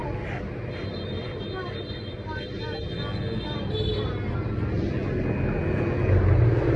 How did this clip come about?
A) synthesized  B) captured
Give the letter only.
B